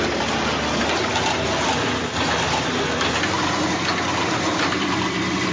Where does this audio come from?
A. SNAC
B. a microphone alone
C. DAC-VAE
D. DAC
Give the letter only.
B